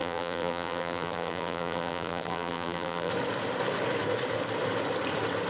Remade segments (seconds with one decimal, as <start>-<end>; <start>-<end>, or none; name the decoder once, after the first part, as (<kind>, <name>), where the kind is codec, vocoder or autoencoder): 0.0-3.1 (vocoder, BigVGAN v2)